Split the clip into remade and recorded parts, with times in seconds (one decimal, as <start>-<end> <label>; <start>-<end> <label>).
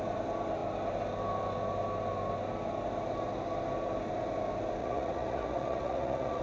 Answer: 0.0-4.8 recorded; 4.8-6.4 remade